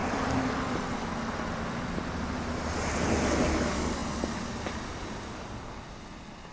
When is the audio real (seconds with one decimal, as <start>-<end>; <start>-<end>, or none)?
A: 0.0-6.5